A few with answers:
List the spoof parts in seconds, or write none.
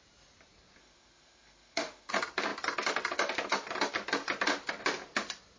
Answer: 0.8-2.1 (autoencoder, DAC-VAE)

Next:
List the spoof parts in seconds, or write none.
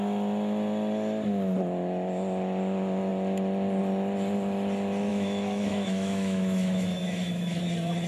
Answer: 5.1-7.6 (autoencoder, DAC-VAE)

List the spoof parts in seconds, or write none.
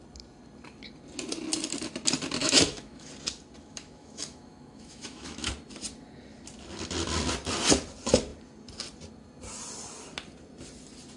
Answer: 2.4-3.1 (autoencoder, DAC-VAE); 3.6-5.5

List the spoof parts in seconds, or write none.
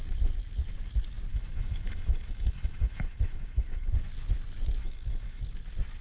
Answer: 1.3-3.9 (autoencoder, DAC-VAE); 4.8-5.4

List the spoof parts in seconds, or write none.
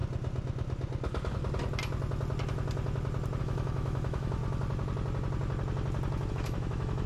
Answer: 3.4-4.4 (autoencoder, DAC-VAE); 6.3-7.1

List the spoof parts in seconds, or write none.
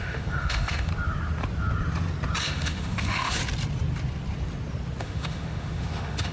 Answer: 0.0-0.9 (autoencoder, DAC-VAE); 2.4-3.4; 5.0-6.3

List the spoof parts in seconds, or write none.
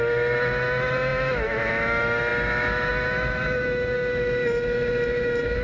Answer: 0.0-5.6 (autoencoder, DAC-VAE)